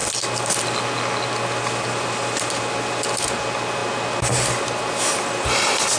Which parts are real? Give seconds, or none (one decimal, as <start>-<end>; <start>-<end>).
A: 0.0-6.0